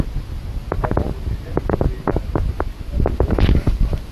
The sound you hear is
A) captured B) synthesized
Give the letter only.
A